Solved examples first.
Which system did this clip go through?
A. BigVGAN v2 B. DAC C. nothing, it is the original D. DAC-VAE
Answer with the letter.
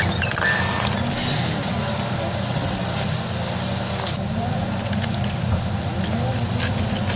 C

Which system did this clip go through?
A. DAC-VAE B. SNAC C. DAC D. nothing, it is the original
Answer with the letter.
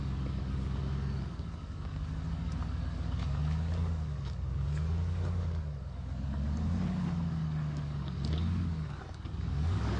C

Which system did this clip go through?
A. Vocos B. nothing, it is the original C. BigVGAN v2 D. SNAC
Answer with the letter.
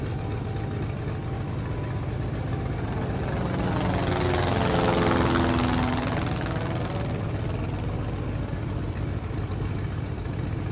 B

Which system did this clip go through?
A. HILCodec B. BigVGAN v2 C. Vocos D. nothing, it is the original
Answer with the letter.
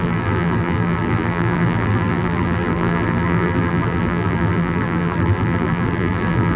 B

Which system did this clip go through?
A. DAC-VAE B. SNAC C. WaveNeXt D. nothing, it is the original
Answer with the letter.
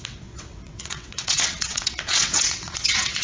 C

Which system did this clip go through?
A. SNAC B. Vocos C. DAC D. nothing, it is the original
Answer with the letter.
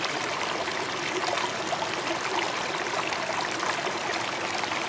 D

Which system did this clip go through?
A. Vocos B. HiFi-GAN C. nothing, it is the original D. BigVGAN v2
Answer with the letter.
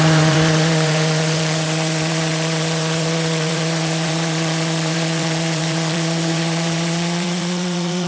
D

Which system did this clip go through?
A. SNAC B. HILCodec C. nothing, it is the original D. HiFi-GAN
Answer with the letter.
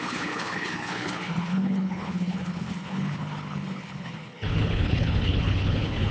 B